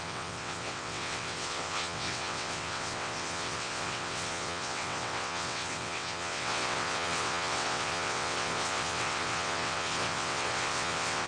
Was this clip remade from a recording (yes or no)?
yes